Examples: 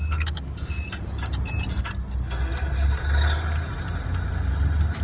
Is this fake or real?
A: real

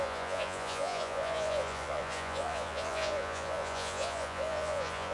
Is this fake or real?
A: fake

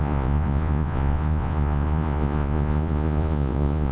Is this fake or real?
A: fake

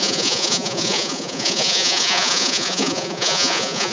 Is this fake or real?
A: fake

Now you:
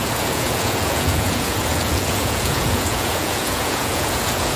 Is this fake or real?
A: fake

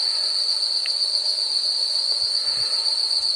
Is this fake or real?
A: fake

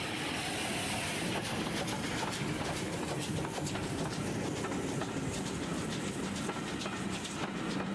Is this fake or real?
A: real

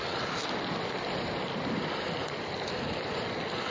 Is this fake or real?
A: real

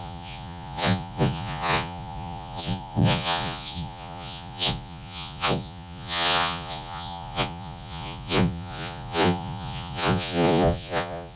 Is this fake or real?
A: fake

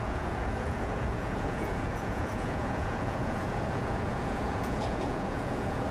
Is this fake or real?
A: fake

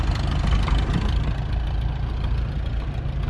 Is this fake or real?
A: real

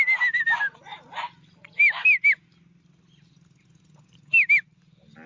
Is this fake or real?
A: real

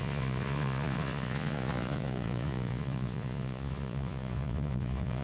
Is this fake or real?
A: fake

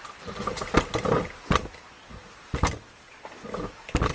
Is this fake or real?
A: real